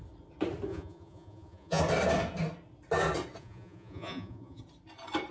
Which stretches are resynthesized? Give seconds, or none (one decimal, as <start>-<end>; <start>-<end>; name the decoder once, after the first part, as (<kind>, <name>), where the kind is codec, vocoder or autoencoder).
0.7-1.8 (vocoder, Vocos); 3.4-4.6